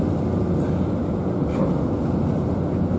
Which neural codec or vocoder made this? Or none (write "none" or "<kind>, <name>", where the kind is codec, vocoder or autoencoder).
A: none